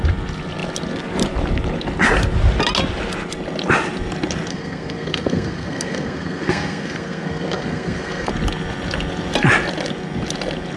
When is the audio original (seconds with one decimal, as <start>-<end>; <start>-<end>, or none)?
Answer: 0.0-4.5; 8.3-10.8